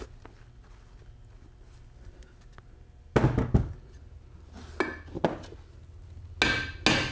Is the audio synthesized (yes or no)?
no